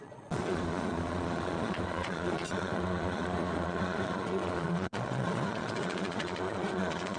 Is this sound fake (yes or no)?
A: yes